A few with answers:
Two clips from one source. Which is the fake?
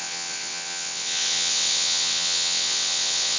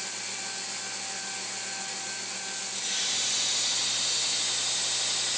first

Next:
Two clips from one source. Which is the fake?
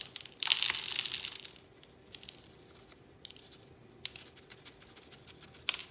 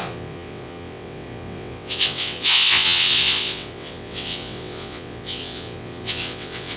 second